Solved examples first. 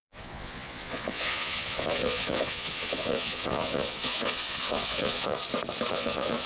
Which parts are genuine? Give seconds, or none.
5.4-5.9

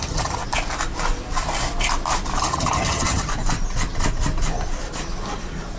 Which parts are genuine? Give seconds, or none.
0.4-2.4; 3.3-5.8